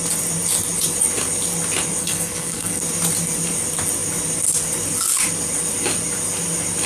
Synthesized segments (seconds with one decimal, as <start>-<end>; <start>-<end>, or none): 2.0-2.8